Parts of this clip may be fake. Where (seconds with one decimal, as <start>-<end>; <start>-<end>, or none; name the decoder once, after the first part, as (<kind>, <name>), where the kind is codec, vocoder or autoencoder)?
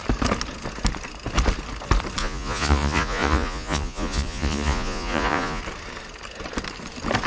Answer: 2.2-5.6 (vocoder, Vocos)